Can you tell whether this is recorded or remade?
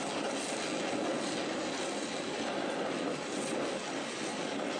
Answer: recorded